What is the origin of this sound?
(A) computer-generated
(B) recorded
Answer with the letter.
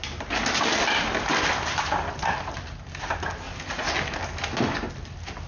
B